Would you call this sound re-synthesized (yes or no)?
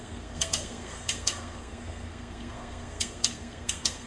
yes